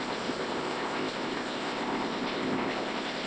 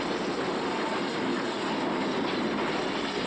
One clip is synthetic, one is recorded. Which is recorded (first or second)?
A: second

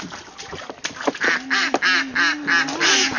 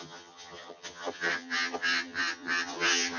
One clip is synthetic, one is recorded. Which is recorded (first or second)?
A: first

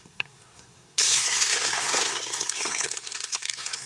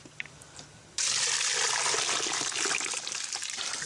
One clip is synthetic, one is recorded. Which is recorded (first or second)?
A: second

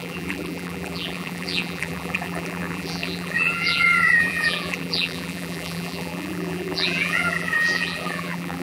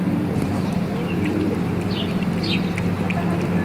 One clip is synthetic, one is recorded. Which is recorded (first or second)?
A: second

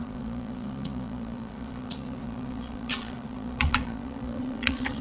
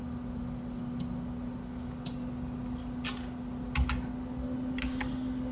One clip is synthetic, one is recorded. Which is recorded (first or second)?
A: second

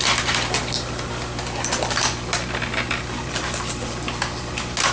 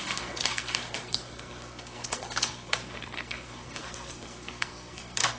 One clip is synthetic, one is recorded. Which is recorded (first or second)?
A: first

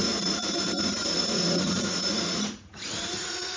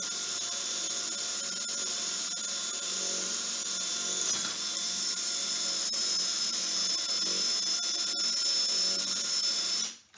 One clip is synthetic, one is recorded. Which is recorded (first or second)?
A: second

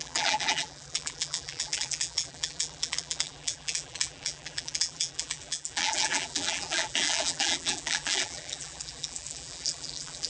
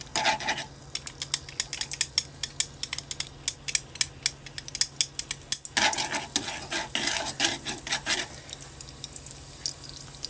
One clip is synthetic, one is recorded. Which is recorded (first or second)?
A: second